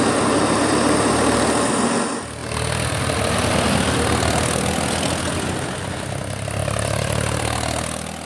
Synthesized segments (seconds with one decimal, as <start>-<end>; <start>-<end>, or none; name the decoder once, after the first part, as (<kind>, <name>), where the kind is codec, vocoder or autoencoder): 2.4-3.4 (vocoder, BigVGAN v2); 6.6-7.4